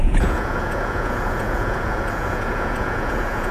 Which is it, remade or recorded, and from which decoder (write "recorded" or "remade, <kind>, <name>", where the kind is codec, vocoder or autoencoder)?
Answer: remade, vocoder, Vocos